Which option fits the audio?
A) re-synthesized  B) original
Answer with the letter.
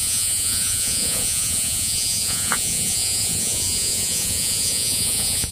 A